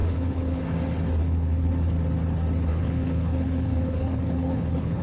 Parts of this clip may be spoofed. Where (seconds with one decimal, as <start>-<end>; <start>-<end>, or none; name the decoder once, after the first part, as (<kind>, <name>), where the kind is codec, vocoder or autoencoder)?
0.0-0.6 (codec, HILCodec); 1.2-1.7; 2.7-5.0